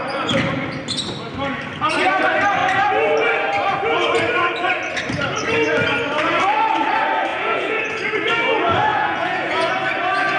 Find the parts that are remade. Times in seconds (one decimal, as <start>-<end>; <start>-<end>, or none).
7.3-8.0; 8.9-9.7